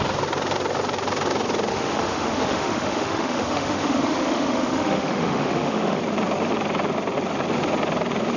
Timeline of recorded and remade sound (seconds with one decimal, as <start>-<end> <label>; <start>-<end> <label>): 0.0-1.7 recorded; 1.7-6.0 remade; 6.0-8.4 recorded